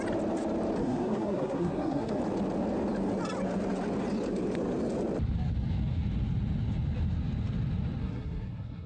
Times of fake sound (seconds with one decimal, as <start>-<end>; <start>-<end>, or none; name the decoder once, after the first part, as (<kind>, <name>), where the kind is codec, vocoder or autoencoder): 0.8-2.2 (codec, SNAC); 8.0-8.9